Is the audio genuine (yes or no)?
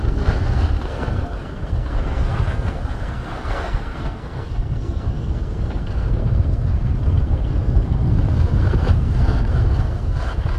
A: no